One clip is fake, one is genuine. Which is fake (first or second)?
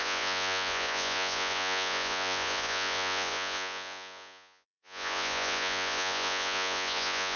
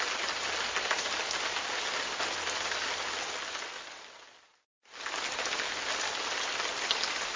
first